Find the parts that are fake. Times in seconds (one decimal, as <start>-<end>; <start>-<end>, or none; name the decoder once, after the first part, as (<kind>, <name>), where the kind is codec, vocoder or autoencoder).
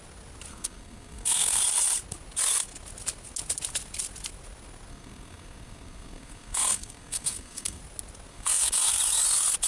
0.5-1.6 (codec, SNAC); 4.9-7.8; 8.3-9.0